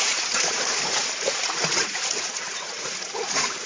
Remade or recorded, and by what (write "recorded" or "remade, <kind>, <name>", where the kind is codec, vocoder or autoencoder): remade, vocoder, Vocos